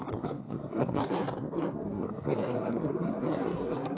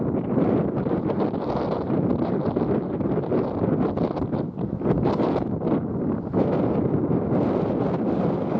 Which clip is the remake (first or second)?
first